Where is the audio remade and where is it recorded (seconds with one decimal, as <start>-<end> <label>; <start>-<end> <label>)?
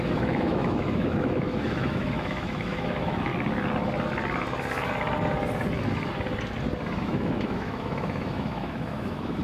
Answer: 0.0-3.3 remade; 3.3-7.0 recorded; 7.0-9.4 remade